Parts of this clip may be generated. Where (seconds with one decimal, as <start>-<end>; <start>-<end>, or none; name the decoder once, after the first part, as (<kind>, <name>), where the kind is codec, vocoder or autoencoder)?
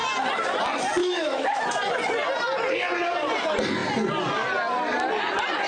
1.0-1.7 (autoencoder, DAC-VAE)